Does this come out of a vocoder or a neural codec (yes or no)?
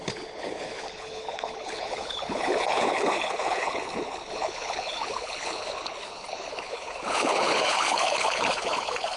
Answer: yes